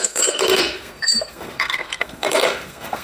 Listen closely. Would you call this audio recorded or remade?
remade